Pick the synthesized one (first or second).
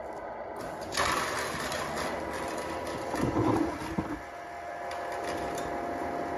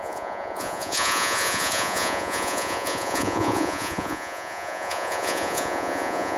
second